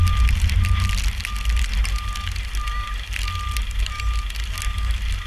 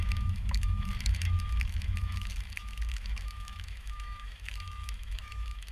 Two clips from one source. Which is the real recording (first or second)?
first